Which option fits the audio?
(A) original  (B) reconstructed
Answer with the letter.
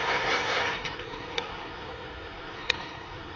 B